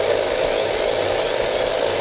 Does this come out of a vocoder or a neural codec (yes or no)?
no